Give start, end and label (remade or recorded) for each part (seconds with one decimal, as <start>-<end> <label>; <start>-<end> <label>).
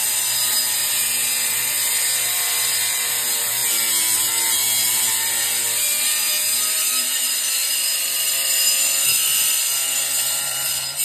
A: 0.0-3.6 remade; 3.6-4.9 recorded; 4.9-11.0 remade